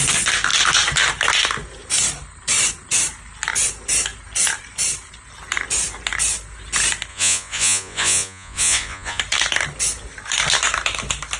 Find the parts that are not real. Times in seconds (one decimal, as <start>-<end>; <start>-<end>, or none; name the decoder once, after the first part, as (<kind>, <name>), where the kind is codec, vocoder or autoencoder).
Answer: 7.1-9.2 (vocoder, Vocos)